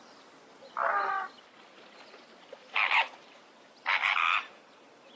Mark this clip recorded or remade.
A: recorded